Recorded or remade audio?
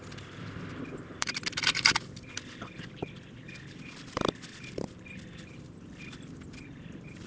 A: remade